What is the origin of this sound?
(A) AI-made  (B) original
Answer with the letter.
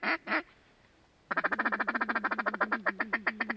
B